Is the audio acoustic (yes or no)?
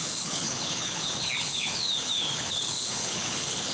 no